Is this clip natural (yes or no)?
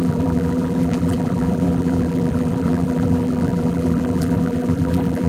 no